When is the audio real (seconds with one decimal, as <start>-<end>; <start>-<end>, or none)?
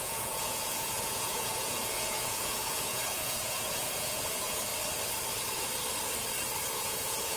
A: 4.7-6.7